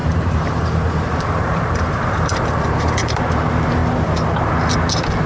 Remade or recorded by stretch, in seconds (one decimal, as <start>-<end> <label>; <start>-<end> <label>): 0.0-3.2 remade; 3.2-5.3 recorded